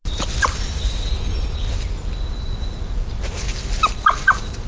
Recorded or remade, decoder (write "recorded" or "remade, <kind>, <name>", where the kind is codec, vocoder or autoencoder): recorded